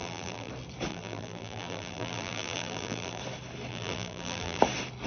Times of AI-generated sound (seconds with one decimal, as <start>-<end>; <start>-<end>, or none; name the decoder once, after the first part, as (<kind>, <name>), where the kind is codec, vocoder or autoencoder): 0.0-0.5 (vocoder, BigVGAN v2); 0.9-3.2; 3.7-4.6